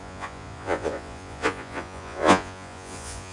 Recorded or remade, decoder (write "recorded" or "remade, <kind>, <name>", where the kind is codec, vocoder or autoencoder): remade, vocoder, Vocos